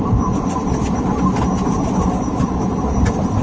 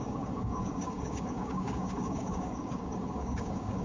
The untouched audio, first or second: first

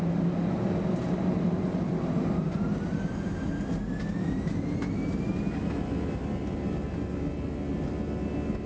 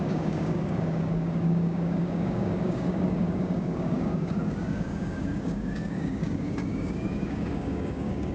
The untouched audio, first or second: first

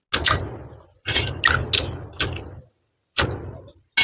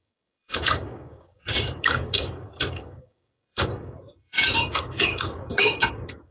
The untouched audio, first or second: first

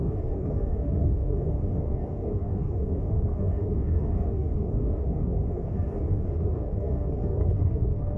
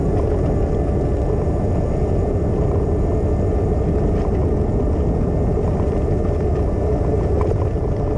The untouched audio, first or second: second